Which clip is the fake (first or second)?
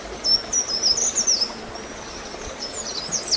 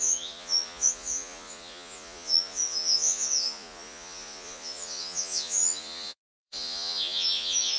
second